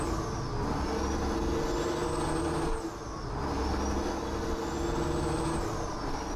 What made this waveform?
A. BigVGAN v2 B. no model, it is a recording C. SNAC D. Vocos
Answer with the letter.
B